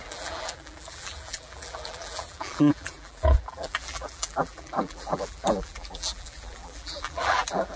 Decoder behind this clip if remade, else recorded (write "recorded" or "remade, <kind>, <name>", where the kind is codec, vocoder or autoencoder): remade, vocoder, BigVGAN v2